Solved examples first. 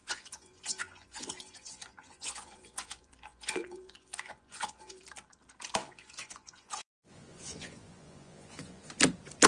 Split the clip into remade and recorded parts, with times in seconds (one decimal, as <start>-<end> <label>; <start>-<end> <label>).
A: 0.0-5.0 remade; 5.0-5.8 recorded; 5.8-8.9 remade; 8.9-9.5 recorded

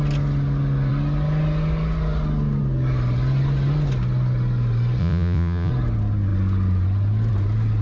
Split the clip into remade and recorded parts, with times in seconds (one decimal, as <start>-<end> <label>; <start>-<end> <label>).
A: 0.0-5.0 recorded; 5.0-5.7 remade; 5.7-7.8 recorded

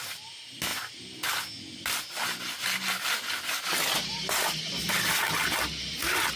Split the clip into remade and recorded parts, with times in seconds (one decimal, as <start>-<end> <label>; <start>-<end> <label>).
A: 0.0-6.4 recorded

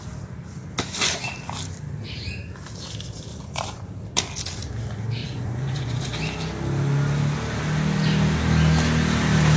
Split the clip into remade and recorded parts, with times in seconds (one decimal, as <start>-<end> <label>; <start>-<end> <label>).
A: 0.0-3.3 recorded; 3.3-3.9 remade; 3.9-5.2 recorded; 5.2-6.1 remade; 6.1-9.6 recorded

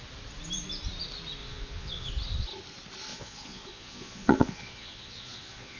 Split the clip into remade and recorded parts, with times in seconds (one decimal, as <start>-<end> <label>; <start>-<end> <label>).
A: 0.0-1.4 recorded; 1.4-2.1 remade; 2.1-3.1 recorded; 3.1-5.8 remade